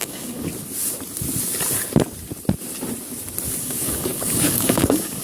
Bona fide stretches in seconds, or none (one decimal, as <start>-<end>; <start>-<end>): 0.5-3.6